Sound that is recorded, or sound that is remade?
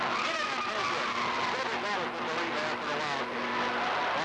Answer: recorded